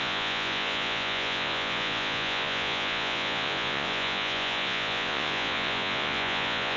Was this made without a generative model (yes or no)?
no